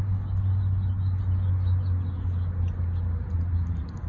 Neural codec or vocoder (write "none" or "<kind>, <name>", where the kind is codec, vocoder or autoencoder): none